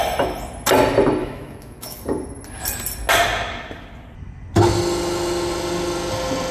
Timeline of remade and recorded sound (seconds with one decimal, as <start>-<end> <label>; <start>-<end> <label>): 0.0-1.2 recorded; 1.2-2.0 remade; 2.0-6.5 recorded